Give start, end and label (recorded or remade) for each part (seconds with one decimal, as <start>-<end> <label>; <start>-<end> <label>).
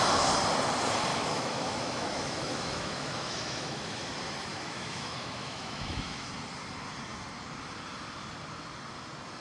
0.0-1.1 recorded; 1.1-4.1 remade; 4.1-4.5 recorded; 4.5-6.3 remade; 6.3-9.4 recorded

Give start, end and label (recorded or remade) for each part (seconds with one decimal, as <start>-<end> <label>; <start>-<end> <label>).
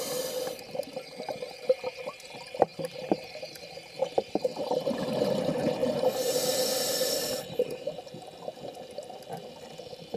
0.0-2.7 recorded; 2.7-5.0 remade; 5.0-5.8 recorded; 5.8-6.4 remade; 6.4-10.2 recorded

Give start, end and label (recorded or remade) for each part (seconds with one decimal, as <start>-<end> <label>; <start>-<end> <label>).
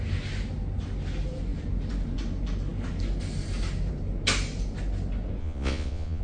0.0-5.4 recorded; 5.4-6.2 remade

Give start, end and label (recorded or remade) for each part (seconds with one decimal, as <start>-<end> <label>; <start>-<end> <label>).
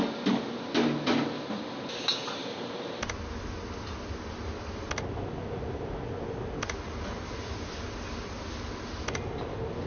0.0-9.9 recorded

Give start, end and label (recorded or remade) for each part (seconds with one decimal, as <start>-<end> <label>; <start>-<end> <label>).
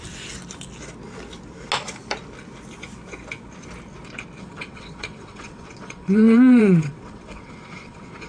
0.0-4.4 recorded; 4.4-8.3 remade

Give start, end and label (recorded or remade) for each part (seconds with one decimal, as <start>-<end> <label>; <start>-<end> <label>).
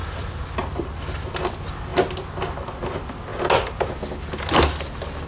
0.0-5.3 recorded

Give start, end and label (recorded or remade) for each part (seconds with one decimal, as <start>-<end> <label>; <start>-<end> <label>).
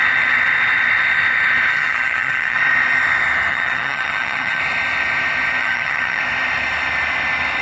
0.0-1.7 recorded; 1.7-2.6 remade; 2.6-3.5 recorded; 3.5-4.6 remade; 4.6-5.6 recorded; 5.6-6.2 remade; 6.2-7.6 recorded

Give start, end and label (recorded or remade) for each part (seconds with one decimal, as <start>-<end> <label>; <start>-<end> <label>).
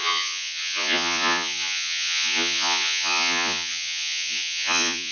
0.0-5.1 remade